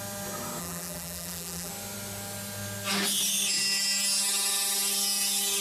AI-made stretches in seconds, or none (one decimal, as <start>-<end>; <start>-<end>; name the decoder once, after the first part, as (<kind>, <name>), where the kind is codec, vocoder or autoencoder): 0.6-1.7 (vocoder, BigVGAN v2)